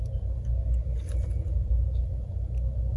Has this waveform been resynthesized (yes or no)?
no